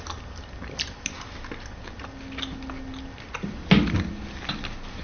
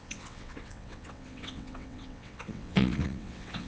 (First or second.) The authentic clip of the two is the first